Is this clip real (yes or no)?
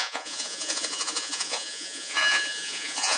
no